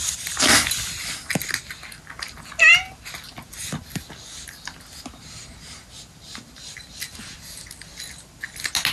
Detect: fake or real real